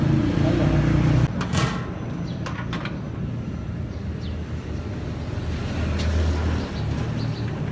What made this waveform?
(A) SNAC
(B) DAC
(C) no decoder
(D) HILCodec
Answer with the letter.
C